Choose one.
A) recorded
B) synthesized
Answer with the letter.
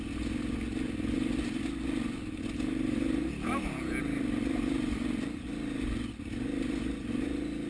A